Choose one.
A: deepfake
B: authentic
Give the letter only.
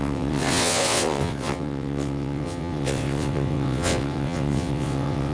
A